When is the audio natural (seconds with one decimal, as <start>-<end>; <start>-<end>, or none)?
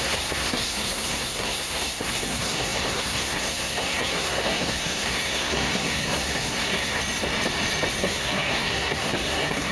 7.0-8.0